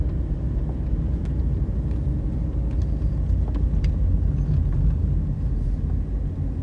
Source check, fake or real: real